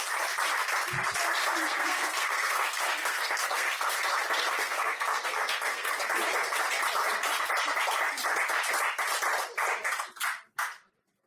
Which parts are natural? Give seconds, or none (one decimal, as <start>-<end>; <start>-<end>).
0.0-1.4; 4.0-4.4; 5.9-11.3